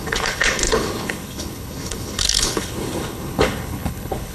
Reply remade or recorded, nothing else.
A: remade